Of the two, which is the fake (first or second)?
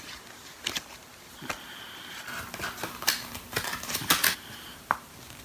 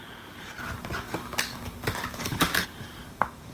second